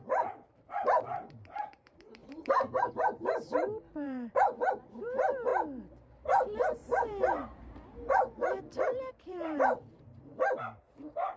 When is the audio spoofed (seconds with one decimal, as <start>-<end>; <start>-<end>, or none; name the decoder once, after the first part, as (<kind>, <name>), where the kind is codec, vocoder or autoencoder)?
0.0-5.5 (vocoder, BigVGAN v2); 6.2-11.4